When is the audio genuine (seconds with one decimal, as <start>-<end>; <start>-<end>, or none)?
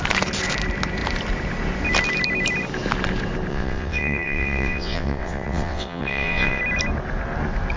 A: 0.0-3.5; 6.6-7.8